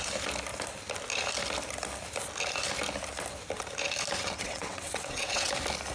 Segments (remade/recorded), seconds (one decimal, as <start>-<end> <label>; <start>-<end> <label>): 0.0-4.2 recorded; 4.2-5.5 remade; 5.5-5.9 recorded